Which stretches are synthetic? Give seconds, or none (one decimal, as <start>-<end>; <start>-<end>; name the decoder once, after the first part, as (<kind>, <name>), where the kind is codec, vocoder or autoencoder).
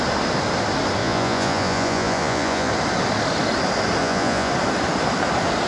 1.0-2.7 (vocoder, Vocos); 4.0-4.5